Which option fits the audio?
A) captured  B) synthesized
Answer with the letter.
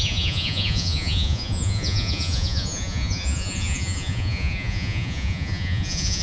B